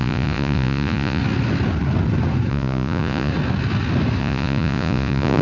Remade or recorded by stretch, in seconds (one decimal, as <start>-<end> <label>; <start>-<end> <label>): 0.0-1.2 remade; 1.2-2.5 recorded; 2.5-3.3 remade; 3.3-4.2 recorded; 4.2-5.4 remade